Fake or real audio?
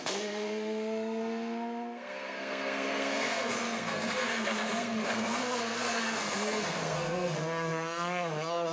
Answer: fake